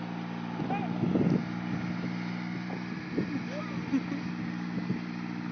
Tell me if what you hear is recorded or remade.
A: recorded